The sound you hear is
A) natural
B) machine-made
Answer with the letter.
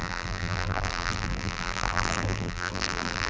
B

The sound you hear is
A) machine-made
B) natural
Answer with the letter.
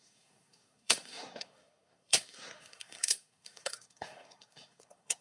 A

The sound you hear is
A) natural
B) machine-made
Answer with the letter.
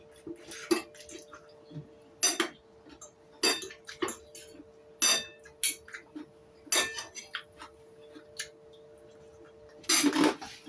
A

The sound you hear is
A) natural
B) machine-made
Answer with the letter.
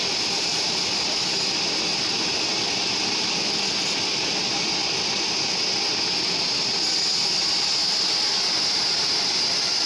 A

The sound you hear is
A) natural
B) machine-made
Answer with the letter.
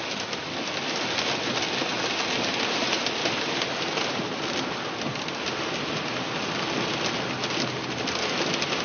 A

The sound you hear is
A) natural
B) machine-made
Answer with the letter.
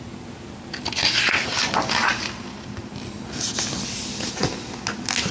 A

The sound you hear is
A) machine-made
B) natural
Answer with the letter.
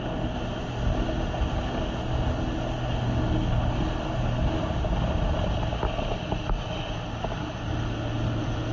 B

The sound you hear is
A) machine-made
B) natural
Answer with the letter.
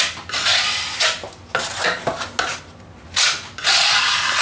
B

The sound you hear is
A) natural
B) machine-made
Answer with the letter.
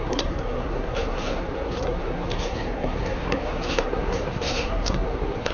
B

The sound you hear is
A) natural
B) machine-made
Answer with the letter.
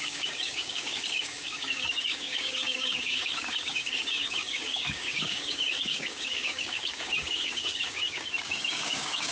B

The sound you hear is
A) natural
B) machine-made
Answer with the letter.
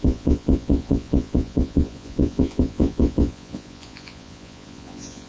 B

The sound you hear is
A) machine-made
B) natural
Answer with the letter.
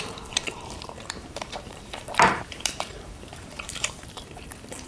A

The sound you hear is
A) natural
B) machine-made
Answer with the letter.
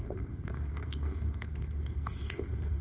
B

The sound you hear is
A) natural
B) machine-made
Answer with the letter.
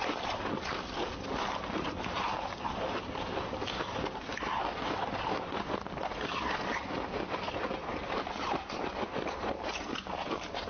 A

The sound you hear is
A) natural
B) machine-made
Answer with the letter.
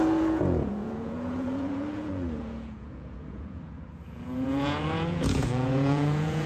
B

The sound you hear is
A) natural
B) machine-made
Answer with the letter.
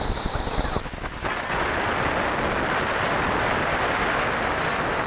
A